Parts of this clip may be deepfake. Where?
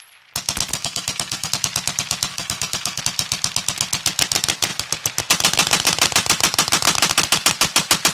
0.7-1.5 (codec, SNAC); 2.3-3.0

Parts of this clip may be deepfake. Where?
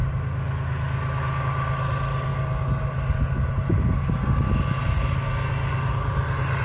none